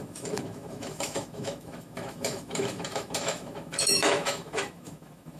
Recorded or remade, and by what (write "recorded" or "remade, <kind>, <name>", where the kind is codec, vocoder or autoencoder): remade, autoencoder, DAC-VAE